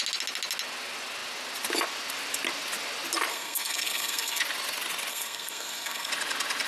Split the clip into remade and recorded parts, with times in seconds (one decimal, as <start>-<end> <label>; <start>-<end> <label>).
0.0-3.3 recorded; 3.3-4.4 remade; 4.4-5.1 recorded; 5.1-6.1 remade; 6.1-6.7 recorded